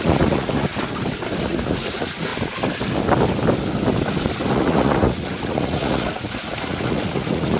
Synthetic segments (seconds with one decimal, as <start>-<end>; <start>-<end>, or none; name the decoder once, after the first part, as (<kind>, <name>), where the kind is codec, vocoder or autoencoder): 0.0-0.7 (vocoder, Vocos); 1.4-2.3; 4.5-7.6